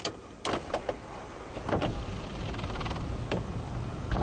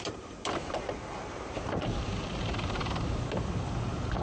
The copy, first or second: second